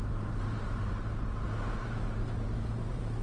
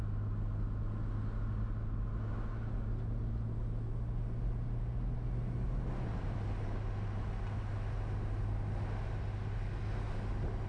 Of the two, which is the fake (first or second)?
first